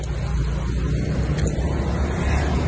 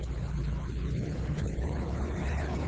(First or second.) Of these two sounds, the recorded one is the first